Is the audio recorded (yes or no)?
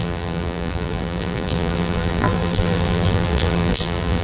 no